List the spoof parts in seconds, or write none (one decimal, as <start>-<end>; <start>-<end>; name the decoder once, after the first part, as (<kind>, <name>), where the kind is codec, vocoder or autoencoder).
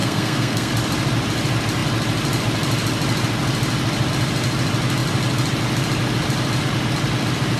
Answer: 0.0-0.7 (codec, SNAC)